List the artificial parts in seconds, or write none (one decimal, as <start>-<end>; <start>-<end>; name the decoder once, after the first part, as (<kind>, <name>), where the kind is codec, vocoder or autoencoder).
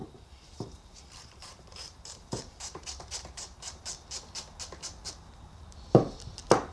0.0-3.8 (vocoder, BigVGAN v2)